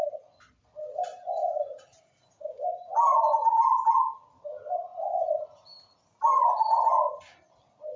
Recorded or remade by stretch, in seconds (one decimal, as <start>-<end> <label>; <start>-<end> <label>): 0.0-4.9 recorded; 4.9-6.3 remade; 6.3-8.0 recorded